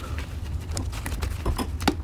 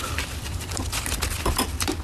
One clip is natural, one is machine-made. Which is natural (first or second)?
first